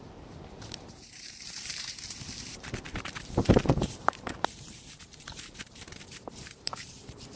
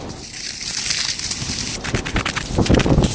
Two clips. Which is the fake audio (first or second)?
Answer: first